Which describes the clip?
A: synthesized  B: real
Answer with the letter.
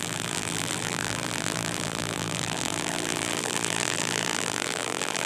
A